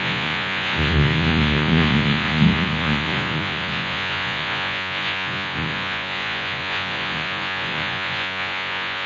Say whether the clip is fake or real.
fake